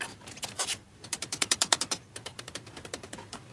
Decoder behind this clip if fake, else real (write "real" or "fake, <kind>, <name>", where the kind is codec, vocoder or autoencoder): fake, vocoder, BigVGAN v2